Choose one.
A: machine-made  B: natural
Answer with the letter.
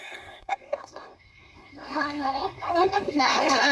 A